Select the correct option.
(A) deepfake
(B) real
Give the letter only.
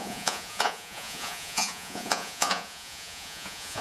A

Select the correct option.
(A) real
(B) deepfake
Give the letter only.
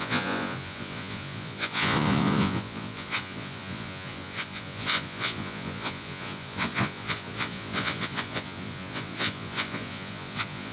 B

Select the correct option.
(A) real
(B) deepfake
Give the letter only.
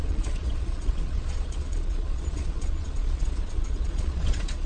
B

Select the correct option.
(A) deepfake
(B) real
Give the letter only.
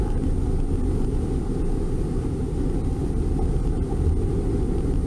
B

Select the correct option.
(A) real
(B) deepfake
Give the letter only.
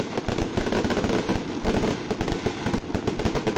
A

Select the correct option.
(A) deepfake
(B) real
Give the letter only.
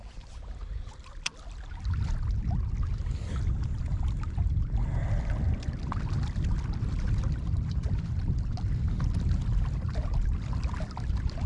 B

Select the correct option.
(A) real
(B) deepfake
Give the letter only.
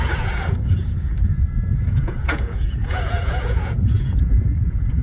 B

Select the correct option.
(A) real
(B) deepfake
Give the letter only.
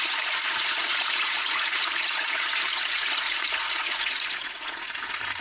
B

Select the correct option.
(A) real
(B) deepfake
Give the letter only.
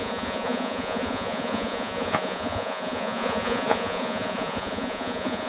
B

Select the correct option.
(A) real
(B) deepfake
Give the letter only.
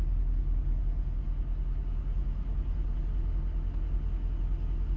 A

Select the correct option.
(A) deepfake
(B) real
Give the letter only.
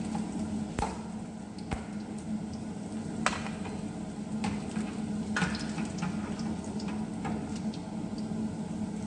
B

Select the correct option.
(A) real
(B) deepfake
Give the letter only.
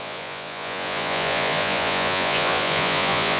B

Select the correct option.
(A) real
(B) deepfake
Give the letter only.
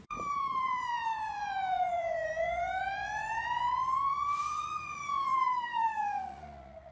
B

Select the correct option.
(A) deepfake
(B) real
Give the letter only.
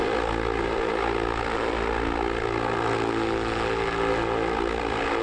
B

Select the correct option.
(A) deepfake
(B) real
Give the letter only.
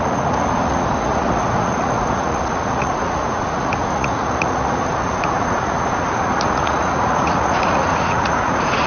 A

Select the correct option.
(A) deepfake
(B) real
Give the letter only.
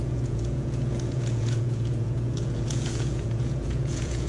A